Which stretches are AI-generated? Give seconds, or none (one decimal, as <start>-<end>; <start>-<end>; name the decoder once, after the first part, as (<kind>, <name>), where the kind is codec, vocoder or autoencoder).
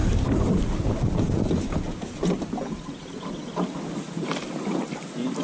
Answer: none